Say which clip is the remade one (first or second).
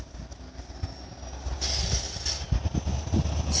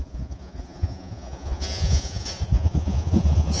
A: second